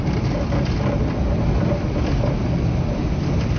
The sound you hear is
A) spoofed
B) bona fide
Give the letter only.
B